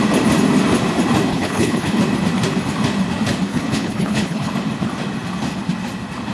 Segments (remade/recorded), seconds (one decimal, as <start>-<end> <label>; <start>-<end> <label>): 0.0-1.3 recorded; 1.3-2.0 remade; 2.0-3.5 recorded; 3.5-4.5 remade; 4.5-6.3 recorded